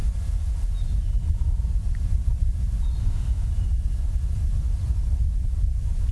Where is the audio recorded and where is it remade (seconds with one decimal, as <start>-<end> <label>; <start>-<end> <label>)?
0.0-3.0 recorded; 3.0-3.5 remade; 3.5-6.1 recorded